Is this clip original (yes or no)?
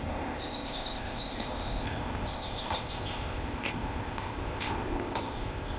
no